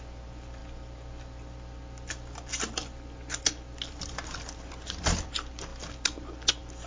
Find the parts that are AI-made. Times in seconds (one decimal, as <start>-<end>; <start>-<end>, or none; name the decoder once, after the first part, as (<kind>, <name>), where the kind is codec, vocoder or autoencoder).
none